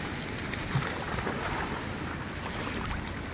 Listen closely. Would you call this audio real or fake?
real